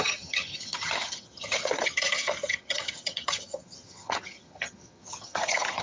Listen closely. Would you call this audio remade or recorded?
remade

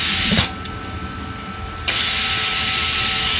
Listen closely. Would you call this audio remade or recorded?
recorded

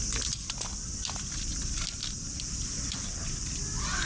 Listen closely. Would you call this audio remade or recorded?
recorded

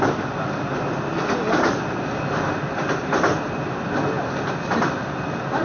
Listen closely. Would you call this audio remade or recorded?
recorded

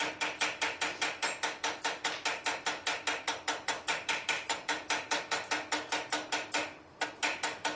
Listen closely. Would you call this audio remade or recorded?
recorded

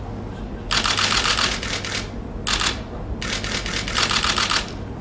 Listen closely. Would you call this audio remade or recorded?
recorded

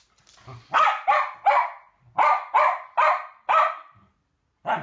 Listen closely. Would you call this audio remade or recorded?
recorded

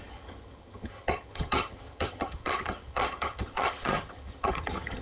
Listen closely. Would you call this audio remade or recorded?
remade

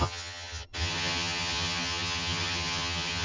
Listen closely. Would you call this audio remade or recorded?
remade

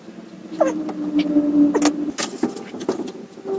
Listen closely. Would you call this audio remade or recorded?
recorded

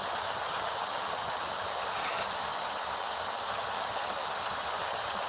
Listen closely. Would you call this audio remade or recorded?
remade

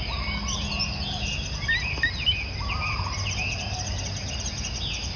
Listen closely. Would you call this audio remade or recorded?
recorded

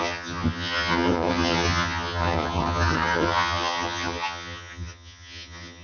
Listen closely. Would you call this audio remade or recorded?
remade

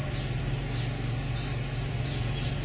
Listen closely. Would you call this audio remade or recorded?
recorded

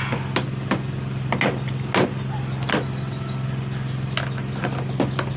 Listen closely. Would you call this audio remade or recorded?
recorded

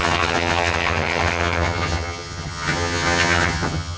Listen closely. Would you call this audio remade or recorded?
remade